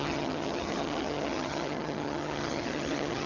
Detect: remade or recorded remade